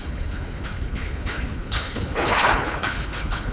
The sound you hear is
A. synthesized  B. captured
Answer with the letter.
A